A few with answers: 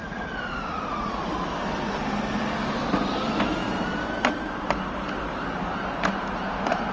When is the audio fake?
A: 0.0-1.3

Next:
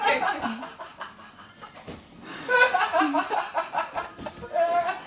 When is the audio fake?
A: none